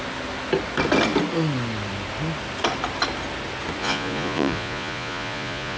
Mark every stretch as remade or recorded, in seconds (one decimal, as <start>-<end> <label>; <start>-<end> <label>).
0.0-3.8 recorded; 3.8-5.8 remade